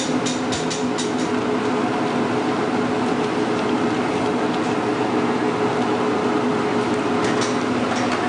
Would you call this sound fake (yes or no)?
no